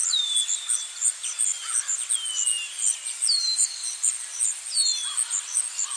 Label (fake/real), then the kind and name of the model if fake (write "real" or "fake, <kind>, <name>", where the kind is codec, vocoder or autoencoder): real